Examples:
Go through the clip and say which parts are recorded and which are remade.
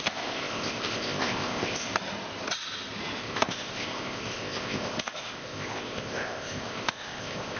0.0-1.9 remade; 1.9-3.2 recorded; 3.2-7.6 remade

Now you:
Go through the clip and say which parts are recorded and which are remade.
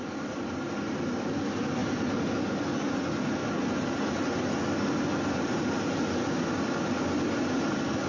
0.0-8.1 recorded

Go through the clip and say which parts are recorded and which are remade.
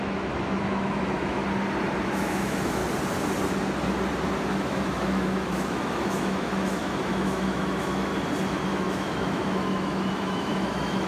0.0-1.4 remade; 1.4-2.0 recorded; 2.0-2.8 remade; 2.8-4.5 recorded; 4.5-8.1 remade; 8.1-8.7 recorded; 8.7-11.1 remade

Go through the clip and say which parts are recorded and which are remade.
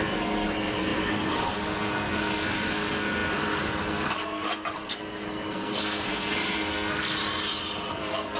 0.0-7.2 remade; 7.2-7.9 recorded; 7.9-8.4 remade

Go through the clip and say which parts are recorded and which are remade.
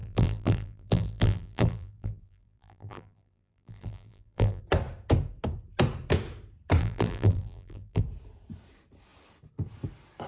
0.0-4.6 remade; 4.6-6.8 recorded; 6.8-8.0 remade; 8.0-10.3 recorded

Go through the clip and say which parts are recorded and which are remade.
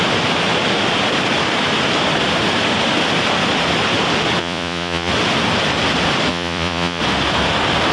0.0-4.4 recorded; 4.4-5.1 remade; 5.1-6.3 recorded; 6.3-7.0 remade; 7.0-7.9 recorded